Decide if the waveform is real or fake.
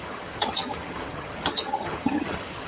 fake